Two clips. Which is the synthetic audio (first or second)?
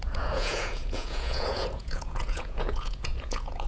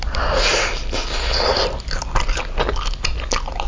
first